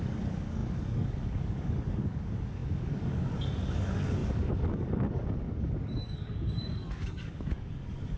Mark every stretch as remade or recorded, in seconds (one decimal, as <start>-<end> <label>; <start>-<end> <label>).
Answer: 0.0-8.2 remade